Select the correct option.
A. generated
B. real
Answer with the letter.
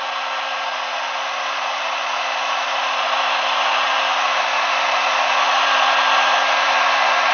A